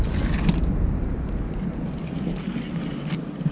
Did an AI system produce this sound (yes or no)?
no